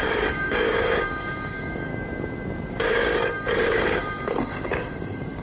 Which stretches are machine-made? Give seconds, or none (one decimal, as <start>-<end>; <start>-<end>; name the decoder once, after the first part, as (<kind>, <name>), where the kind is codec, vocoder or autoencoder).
0.0-1.9 (codec, DAC); 2.7-5.4